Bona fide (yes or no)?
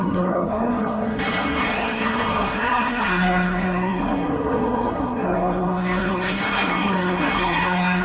no